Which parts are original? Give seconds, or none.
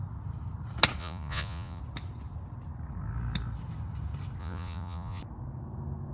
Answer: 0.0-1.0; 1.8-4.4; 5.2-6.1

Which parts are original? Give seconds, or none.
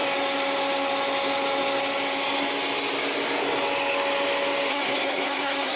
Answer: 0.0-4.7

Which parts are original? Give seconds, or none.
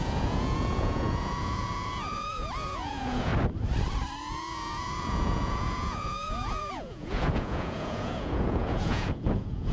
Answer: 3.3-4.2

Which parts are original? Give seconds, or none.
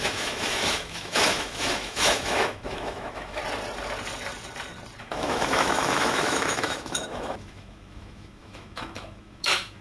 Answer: 3.4-5.0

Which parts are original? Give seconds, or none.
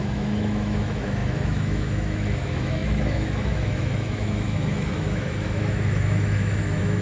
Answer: none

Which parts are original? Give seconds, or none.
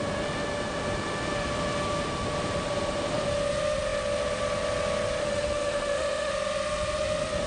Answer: 0.0-5.2; 6.3-7.5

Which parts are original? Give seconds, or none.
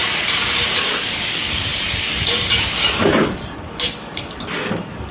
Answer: 0.0-0.7